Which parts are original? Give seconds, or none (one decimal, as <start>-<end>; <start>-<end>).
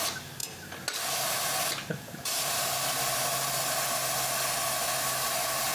0.0-5.7